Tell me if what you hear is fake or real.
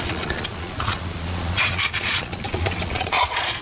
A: fake